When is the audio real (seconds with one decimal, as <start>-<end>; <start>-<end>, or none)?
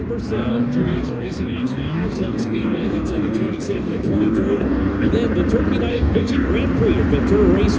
0.0-0.5; 5.1-5.9; 6.5-7.8